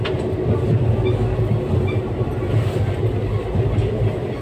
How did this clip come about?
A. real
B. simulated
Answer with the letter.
A